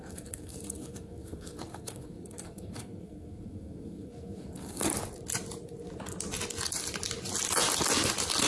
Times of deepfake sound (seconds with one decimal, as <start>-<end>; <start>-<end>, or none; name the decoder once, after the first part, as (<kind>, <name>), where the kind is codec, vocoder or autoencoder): 0.0-4.9 (codec, SNAC)